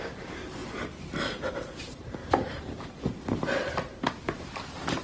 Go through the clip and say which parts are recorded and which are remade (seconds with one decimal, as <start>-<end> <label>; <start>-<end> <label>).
0.0-2.2 recorded; 2.2-3.2 remade; 3.2-5.0 recorded